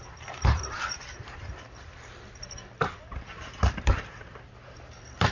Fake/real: fake